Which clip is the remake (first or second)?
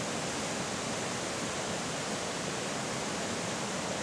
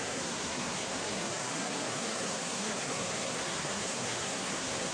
second